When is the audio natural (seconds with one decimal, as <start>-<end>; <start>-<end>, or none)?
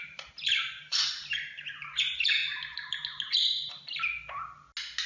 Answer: 1.1-5.1